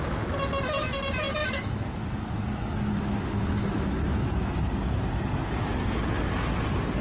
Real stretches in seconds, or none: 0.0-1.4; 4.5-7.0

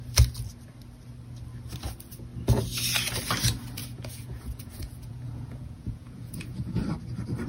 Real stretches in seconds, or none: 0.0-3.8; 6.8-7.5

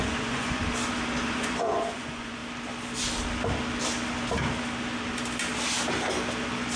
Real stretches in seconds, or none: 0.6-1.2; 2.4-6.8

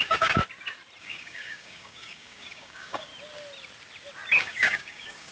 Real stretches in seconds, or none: 0.4-1.0; 3.1-4.4

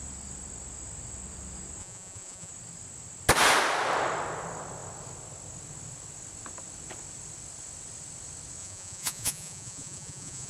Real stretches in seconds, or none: 0.0-1.8; 2.5-8.6

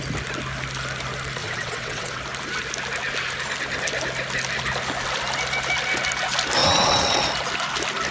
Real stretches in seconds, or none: 0.0-1.4; 2.2-6.6; 7.2-8.1

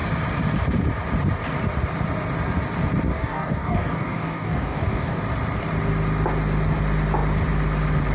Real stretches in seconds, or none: 0.0-3.1; 5.2-8.1

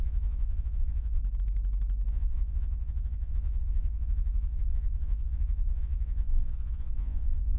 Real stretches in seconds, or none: 1.2-2.1